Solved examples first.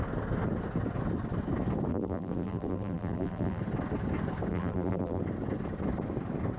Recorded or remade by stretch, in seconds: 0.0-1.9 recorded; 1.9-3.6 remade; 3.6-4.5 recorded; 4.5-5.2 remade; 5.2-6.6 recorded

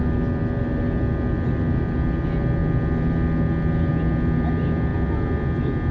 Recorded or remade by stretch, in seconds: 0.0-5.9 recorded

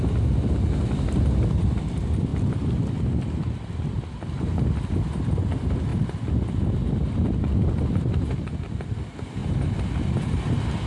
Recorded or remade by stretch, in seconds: 0.0-5.9 recorded; 5.9-6.6 remade; 6.6-10.9 recorded